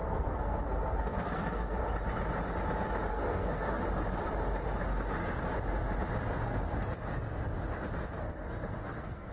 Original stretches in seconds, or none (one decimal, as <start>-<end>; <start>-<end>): 1.8-3.1; 3.8-8.2

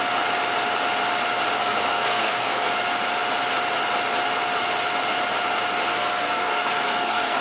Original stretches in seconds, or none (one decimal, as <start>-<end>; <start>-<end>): 0.0-1.6; 2.7-5.9